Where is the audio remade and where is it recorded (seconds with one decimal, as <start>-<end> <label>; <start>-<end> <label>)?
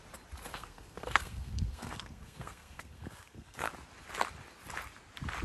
0.0-0.5 recorded; 0.5-3.7 remade; 3.7-5.4 recorded